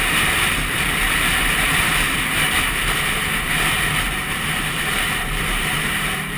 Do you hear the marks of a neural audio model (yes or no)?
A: yes